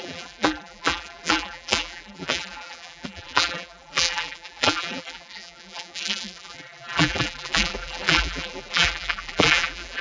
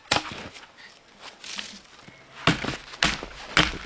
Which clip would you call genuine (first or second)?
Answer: second